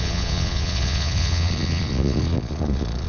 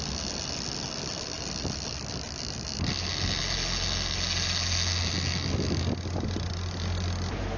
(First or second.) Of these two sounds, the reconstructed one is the first